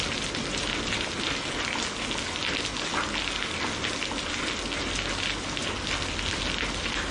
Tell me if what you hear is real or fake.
real